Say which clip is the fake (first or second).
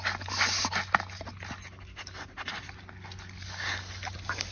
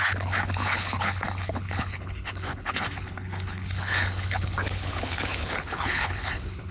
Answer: second